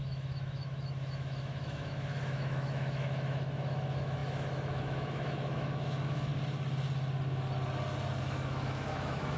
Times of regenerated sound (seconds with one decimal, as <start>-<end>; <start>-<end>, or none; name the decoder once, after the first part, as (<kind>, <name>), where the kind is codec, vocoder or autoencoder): 0.0-6.3 (autoencoder, DAC-VAE); 8.2-9.4